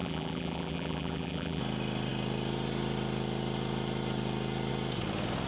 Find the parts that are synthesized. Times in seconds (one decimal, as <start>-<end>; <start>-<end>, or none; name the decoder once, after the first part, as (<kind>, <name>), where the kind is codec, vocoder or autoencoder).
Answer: 0.0-1.6 (vocoder, BigVGAN v2)